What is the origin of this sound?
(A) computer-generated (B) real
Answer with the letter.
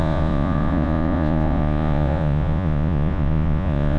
A